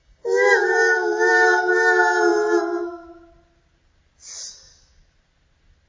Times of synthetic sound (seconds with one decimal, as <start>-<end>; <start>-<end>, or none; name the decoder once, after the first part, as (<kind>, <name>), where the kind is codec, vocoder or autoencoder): 0.0-1.7 (codec, DAC)